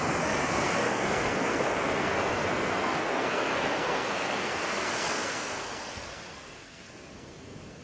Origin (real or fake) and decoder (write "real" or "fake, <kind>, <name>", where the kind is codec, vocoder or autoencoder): fake, codec, SNAC